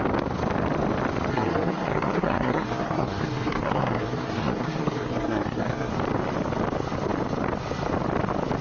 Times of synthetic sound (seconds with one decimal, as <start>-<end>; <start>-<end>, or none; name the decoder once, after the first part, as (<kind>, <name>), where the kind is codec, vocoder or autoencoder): 1.3-5.9 (codec, SNAC)